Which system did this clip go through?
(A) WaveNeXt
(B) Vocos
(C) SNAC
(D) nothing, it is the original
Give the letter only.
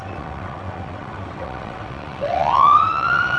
A